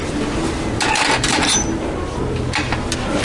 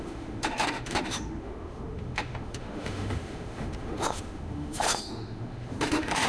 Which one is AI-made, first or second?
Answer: second